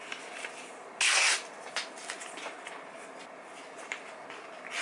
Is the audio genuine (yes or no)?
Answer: yes